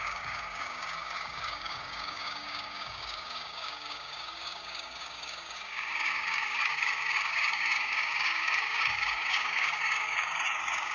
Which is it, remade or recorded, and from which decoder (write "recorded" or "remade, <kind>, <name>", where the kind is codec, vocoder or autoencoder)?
remade, codec, DAC